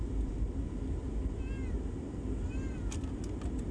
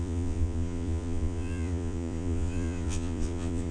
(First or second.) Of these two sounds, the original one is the first